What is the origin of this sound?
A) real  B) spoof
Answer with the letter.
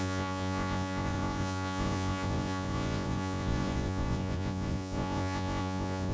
B